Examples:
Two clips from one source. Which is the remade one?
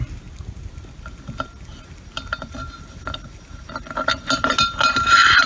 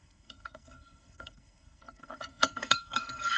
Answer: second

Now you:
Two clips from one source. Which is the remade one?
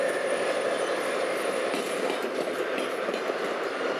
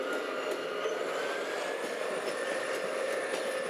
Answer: first